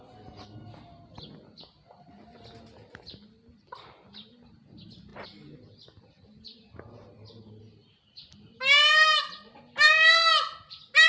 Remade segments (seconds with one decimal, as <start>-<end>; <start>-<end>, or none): none